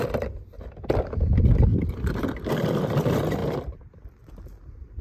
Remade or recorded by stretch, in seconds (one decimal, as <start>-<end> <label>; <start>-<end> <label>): 0.0-1.7 recorded; 1.7-2.2 remade; 2.2-3.4 recorded; 3.4-4.3 remade; 4.3-5.0 recorded